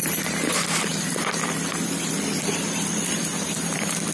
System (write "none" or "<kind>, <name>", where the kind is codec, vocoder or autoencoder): vocoder, BigVGAN v2